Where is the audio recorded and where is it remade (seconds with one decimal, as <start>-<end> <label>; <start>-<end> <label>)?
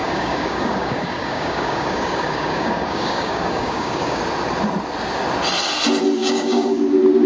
0.0-4.2 remade; 4.2-6.2 recorded; 6.2-6.8 remade; 6.8-7.3 recorded